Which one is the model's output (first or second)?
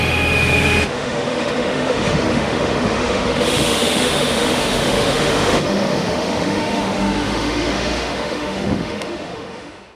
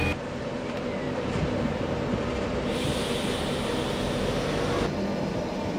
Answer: first